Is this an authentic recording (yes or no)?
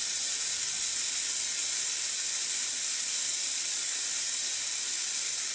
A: yes